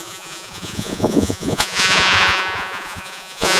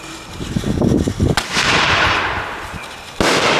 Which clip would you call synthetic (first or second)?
first